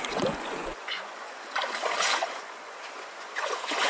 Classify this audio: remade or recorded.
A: remade